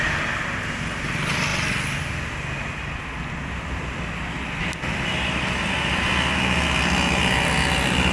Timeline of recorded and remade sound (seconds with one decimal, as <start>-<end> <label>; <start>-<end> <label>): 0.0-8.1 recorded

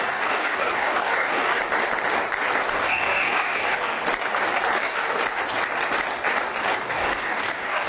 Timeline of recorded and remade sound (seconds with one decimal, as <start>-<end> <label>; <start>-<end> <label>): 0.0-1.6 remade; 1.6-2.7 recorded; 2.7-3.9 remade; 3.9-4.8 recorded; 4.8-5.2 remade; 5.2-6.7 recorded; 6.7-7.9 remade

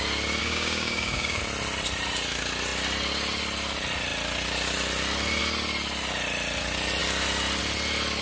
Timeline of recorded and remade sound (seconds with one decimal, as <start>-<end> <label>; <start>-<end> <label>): 0.0-0.4 recorded; 0.4-1.4 remade; 1.4-8.2 recorded

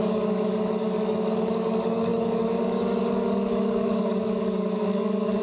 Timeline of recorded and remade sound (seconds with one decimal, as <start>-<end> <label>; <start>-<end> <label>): 0.0-5.4 remade